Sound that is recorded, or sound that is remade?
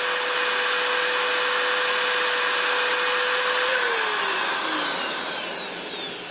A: recorded